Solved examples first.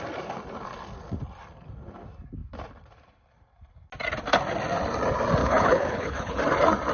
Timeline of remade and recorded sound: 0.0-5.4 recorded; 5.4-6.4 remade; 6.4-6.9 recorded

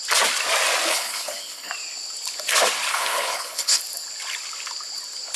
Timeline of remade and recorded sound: 0.0-0.9 recorded; 0.9-1.7 remade; 1.7-2.9 recorded; 2.9-3.8 remade; 3.8-5.4 recorded

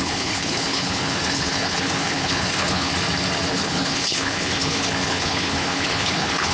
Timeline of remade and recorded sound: 0.0-2.9 remade; 2.9-3.5 recorded; 3.5-6.5 remade

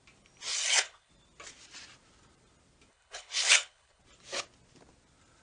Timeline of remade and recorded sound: 0.0-0.5 recorded; 0.5-1.1 remade; 1.1-2.9 recorded; 2.9-4.0 remade; 4.0-5.4 recorded

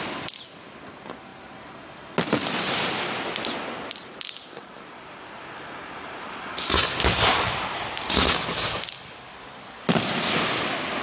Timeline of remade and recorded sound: 0.0-11.0 recorded

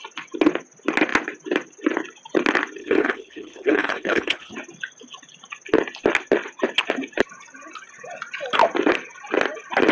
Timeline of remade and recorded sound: 0.0-2.8 recorded; 2.8-4.5 remade; 4.5-9.9 recorded

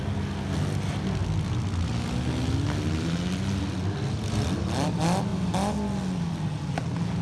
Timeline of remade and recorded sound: 0.0-7.2 recorded

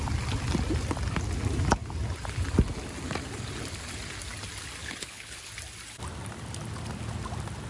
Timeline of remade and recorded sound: 0.0-4.8 recorded; 4.8-5.5 remade; 5.5-7.7 recorded